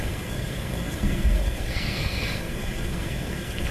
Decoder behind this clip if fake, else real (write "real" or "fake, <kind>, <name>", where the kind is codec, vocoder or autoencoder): fake, codec, SNAC